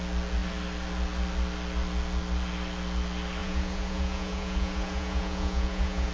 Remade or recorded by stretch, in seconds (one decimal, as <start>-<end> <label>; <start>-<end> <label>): 0.0-3.4 recorded; 3.4-6.1 remade